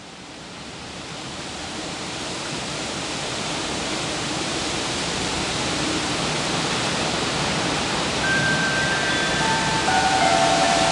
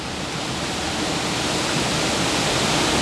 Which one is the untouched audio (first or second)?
second